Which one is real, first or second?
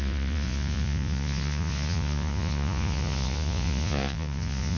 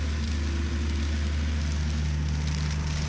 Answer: second